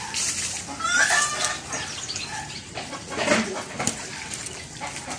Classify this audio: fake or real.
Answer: real